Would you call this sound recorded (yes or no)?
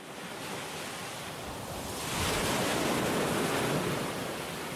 yes